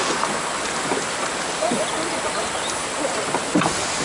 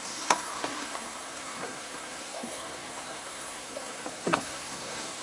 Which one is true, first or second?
first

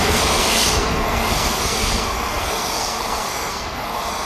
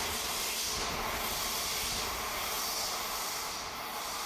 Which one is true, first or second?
second